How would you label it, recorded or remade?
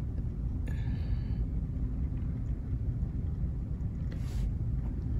recorded